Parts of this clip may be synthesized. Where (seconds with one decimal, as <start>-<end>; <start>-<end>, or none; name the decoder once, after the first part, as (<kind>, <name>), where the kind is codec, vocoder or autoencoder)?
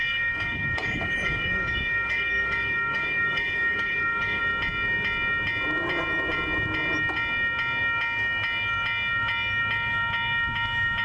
0.0-4.4 (codec, DAC)